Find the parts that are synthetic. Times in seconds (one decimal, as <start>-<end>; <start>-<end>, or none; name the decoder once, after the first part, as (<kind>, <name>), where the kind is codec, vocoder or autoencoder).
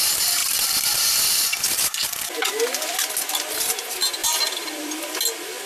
0.4-3.6 (vocoder, BigVGAN v2); 4.2-5.2